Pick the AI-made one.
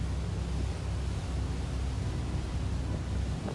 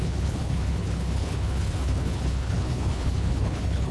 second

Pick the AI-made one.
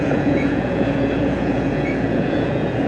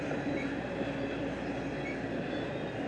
first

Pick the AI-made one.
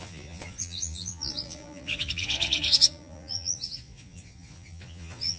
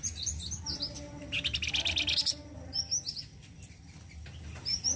first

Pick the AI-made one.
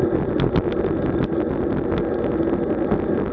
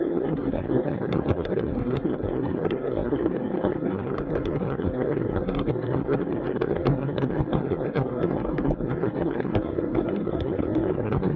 second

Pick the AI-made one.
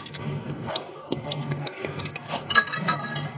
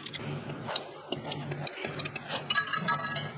first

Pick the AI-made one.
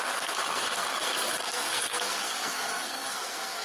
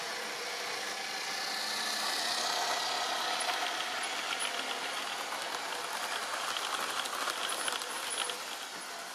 first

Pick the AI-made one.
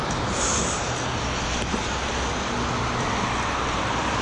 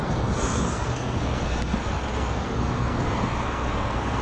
second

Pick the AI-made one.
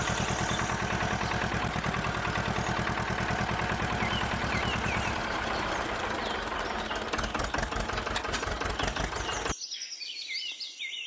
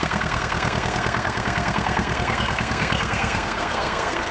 second